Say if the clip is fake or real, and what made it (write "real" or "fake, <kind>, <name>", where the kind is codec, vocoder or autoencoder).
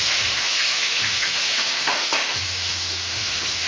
fake, autoencoder, DAC-VAE